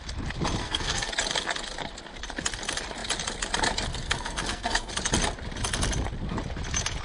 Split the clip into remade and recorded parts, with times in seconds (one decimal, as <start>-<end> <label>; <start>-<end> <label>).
0.0-0.6 recorded; 0.6-1.1 remade; 1.1-3.9 recorded; 3.9-4.9 remade; 4.9-7.0 recorded